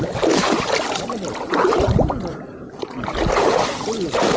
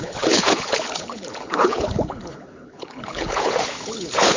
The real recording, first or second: first